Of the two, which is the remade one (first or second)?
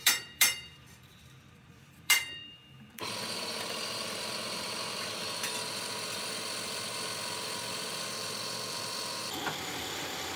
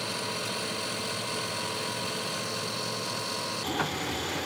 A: first